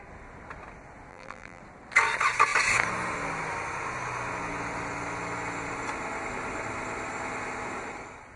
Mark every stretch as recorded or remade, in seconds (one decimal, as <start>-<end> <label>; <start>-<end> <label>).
0.0-1.1 recorded; 1.1-1.6 remade; 1.6-8.4 recorded